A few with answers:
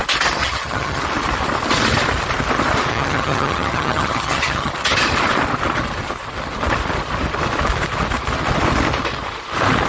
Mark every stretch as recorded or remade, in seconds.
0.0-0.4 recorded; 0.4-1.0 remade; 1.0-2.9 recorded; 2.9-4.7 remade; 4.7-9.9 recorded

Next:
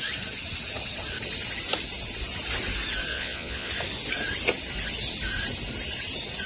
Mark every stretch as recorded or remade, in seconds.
0.0-3.1 recorded; 3.1-3.7 remade; 3.7-6.5 recorded

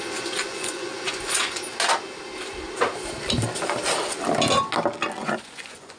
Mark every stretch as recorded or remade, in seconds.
0.0-1.6 remade; 1.6-5.2 recorded; 5.2-6.0 remade

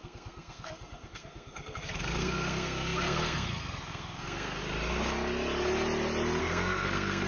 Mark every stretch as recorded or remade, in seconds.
0.0-4.6 remade; 4.6-6.4 recorded; 6.4-7.3 remade

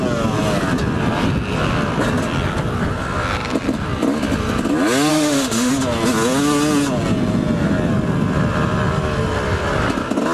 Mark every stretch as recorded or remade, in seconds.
0.0-5.1 recorded; 5.1-5.7 remade; 5.7-10.3 recorded